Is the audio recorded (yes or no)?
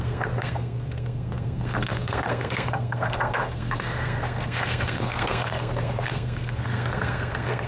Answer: no